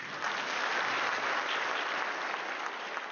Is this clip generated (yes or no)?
no